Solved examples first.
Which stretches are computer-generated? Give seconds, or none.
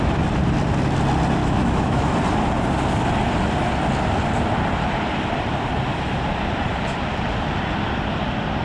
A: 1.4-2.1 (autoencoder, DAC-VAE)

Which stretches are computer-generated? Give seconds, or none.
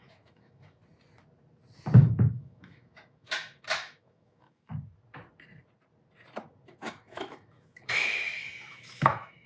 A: 0.0-0.8 (autoencoder, DAC-VAE); 2.0-4.7; 6.7-9.5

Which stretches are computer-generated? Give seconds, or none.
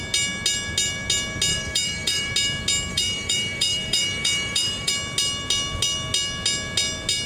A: 1.5-2.3 (autoencoder, DAC-VAE); 2.9-4.9